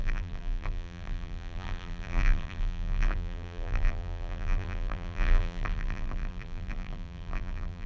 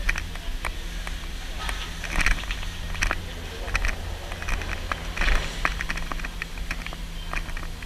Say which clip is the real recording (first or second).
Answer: second